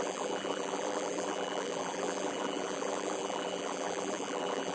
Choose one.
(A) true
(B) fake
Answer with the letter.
B